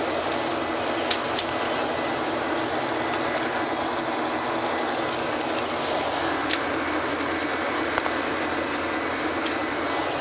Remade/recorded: recorded